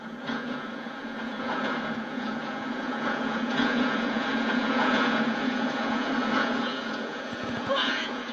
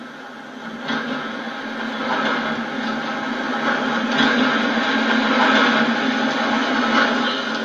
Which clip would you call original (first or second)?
second